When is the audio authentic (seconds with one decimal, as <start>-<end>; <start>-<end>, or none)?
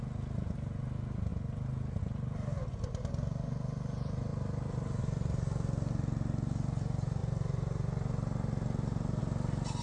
0.0-9.8